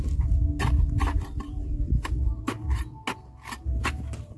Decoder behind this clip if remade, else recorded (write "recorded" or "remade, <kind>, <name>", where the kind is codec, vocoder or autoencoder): recorded